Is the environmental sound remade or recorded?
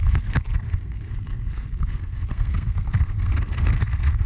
remade